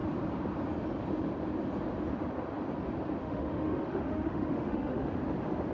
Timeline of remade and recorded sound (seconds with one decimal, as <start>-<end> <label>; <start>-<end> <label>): 0.0-3.2 recorded; 3.2-5.2 remade; 5.2-5.7 recorded